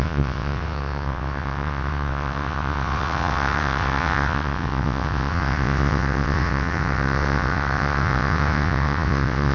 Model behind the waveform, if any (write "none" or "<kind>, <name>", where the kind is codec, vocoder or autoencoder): vocoder, WaveNeXt